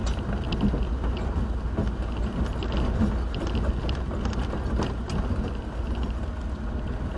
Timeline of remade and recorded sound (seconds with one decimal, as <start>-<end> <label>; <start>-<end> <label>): 0.0-7.2 recorded